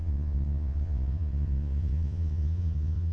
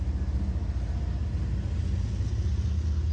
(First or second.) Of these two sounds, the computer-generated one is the first